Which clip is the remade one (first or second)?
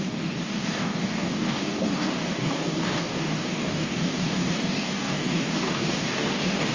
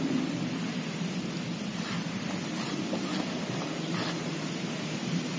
first